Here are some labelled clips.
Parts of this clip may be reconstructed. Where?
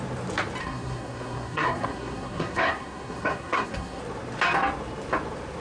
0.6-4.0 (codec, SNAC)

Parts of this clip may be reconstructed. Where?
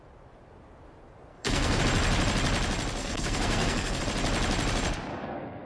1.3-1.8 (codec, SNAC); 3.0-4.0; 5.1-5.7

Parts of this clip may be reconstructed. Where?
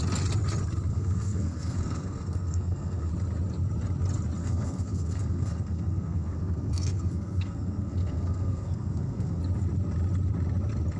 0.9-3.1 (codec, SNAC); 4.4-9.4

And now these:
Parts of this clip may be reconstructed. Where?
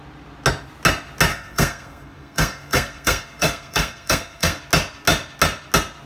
1.3-4.6 (codec, SNAC)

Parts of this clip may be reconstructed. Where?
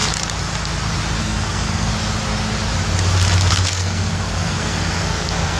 1.2-1.9 (codec, SNAC); 3.5-5.6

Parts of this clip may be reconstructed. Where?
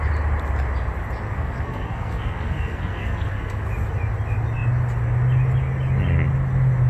1.3-3.7 (codec, SNAC)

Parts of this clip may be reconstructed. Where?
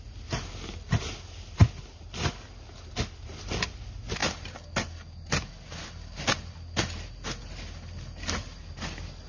none